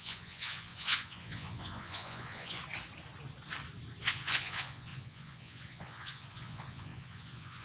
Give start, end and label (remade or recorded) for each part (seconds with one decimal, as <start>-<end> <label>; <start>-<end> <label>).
0.0-2.6 remade; 2.6-4.0 recorded; 4.0-7.6 remade